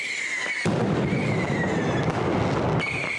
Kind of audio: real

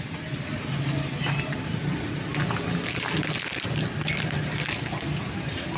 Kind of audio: real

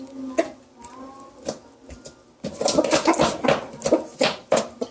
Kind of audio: real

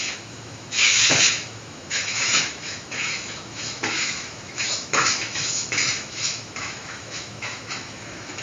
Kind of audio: fake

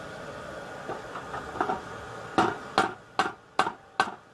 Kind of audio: real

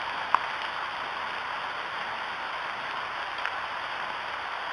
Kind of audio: real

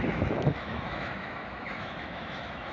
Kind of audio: fake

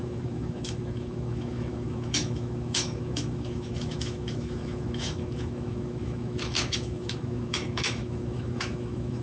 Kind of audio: fake